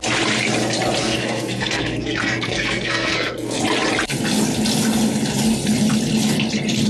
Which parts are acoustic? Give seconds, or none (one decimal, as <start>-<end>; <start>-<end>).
0.0-1.0; 3.6-6.9